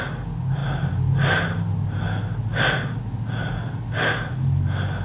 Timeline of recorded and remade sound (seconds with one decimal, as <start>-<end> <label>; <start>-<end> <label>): 0.0-5.0 recorded